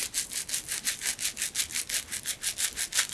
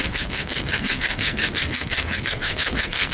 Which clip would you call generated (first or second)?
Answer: second